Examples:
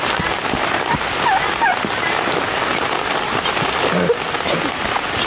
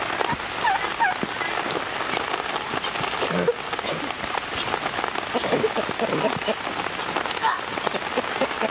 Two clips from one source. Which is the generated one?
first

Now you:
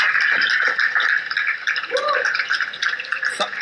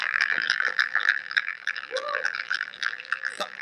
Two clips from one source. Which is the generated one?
second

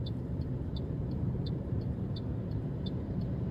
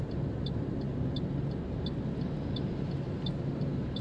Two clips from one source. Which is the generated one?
first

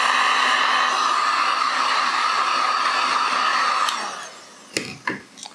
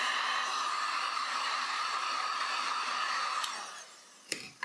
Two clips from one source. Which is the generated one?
second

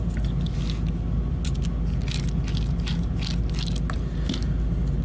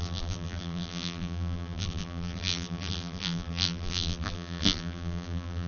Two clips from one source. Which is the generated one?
second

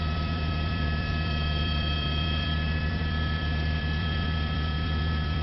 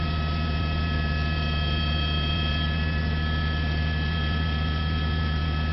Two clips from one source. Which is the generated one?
first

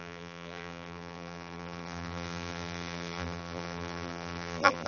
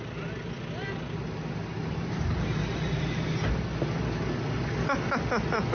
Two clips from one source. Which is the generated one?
first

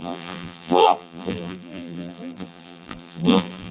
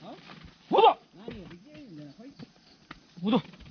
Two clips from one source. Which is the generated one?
first